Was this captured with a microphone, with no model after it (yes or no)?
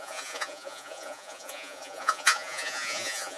no